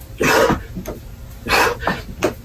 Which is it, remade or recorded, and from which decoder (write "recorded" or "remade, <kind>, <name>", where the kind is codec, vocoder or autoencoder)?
recorded